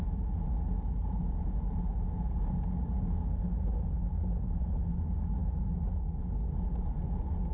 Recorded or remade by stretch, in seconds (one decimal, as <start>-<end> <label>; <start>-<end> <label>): 0.0-7.5 recorded

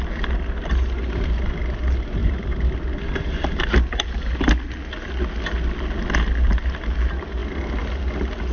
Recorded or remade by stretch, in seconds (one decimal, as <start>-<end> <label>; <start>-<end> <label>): 0.0-2.2 recorded; 2.2-2.7 remade; 2.7-8.5 recorded